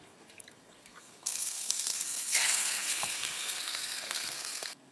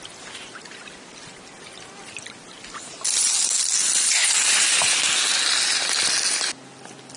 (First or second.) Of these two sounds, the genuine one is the second